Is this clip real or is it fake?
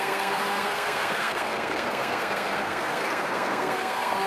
fake